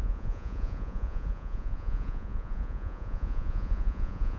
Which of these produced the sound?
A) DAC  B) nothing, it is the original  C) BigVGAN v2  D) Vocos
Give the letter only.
D